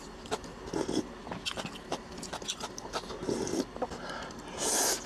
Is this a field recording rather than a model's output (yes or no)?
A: yes